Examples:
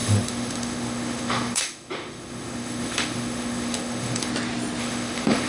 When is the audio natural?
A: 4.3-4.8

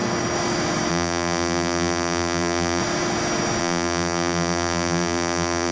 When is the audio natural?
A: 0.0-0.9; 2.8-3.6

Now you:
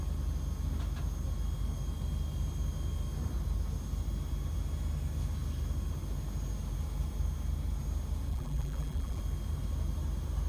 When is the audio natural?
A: 0.0-8.3; 9.2-10.5

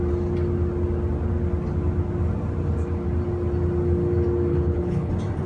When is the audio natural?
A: 0.0-4.5; 5.1-5.5